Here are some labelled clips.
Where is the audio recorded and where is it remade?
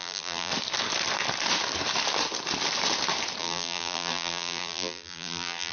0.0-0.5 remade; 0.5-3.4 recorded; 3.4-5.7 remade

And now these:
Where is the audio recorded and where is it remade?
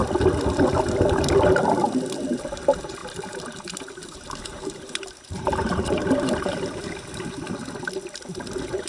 0.0-3.0 recorded; 3.0-6.9 remade; 6.9-8.9 recorded